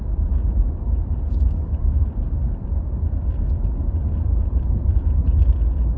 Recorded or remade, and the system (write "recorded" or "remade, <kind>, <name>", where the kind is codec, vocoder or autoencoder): remade, vocoder, BigVGAN v2